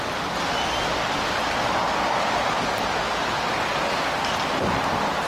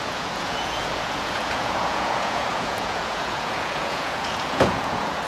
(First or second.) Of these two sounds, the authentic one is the first